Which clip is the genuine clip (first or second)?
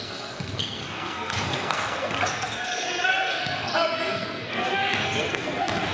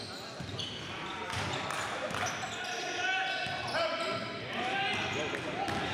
second